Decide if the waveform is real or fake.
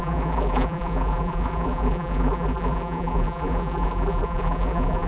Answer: fake